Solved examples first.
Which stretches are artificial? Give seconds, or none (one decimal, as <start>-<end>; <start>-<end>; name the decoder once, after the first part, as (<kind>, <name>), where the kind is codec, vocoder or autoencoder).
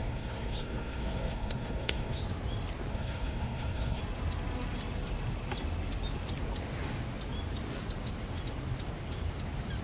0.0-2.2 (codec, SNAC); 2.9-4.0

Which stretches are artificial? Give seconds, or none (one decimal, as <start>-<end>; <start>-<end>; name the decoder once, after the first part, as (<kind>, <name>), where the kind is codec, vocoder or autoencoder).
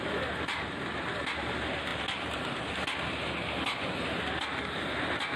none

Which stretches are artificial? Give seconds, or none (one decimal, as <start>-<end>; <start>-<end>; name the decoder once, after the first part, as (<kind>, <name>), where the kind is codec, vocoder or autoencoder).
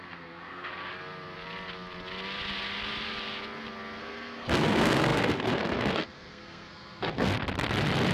0.0-0.7 (codec, SNAC); 4.0-7.3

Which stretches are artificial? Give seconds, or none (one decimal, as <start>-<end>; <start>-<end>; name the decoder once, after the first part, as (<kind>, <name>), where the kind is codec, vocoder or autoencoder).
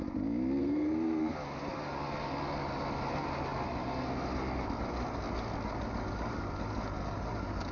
0.6-1.2 (codec, SNAC)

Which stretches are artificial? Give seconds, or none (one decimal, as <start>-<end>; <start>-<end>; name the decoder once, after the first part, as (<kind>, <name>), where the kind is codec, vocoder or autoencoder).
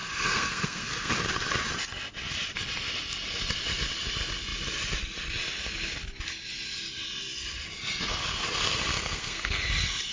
0.0-1.1 (codec, SNAC); 8.9-9.7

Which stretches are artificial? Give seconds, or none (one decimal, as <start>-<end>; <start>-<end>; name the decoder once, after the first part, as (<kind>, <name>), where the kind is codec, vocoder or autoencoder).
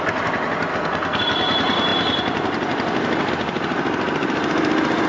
0.7-1.2 (codec, SNAC)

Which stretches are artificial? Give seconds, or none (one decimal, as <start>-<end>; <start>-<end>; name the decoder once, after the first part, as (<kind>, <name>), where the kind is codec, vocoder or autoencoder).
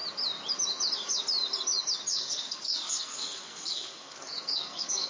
2.1-5.1 (codec, SNAC)